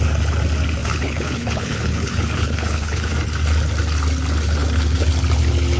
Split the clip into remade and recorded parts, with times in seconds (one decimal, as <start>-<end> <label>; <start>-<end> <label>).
0.0-0.8 recorded; 0.8-3.1 remade; 3.1-5.8 recorded